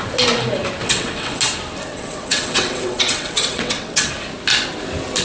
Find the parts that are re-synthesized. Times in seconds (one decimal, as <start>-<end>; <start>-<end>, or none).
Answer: 0.8-1.4; 1.9-4.1